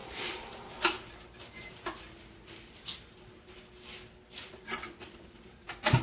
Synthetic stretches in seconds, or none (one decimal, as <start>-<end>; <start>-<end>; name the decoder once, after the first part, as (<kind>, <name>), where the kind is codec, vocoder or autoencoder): 0.0-3.6 (vocoder, BigVGAN v2); 4.4-6.0